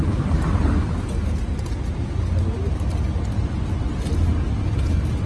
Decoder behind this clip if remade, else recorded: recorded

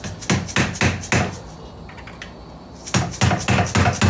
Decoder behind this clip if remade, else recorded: recorded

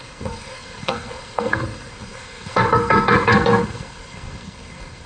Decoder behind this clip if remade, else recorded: remade, codec, SNAC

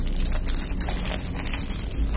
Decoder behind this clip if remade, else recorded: recorded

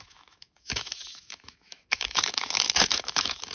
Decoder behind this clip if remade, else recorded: remade, autoencoder, DAC-VAE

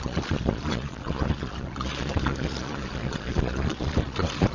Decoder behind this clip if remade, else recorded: remade, vocoder, Vocos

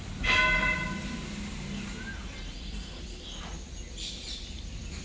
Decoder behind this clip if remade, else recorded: recorded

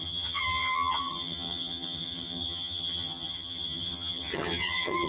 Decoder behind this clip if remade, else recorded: remade, vocoder, HiFi-GAN